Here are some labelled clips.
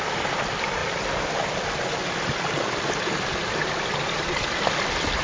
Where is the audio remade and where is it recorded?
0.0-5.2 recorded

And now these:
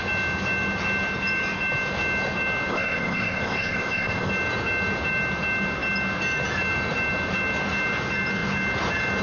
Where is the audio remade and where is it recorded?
0.0-2.7 recorded; 2.7-4.3 remade; 4.3-9.2 recorded

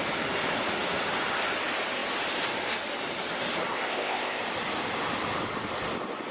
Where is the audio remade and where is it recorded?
0.0-3.7 recorded; 3.7-4.4 remade; 4.4-6.3 recorded

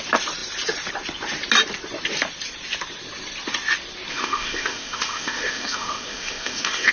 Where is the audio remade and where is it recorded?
0.0-4.1 recorded; 4.1-6.9 remade

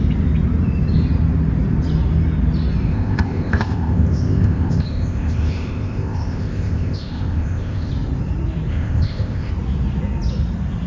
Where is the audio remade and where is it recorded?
0.0-2.9 recorded; 2.9-7.9 remade; 7.9-8.7 recorded; 8.7-9.5 remade; 9.5-10.9 recorded

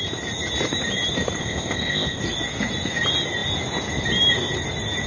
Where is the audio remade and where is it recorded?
0.0-1.4 recorded; 1.4-2.2 remade; 2.2-5.1 recorded